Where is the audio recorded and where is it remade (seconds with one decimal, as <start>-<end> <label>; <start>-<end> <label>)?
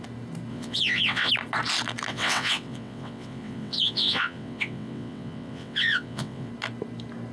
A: 0.0-0.5 recorded; 0.5-1.3 remade; 1.3-2.1 recorded; 2.1-6.5 remade; 6.5-7.3 recorded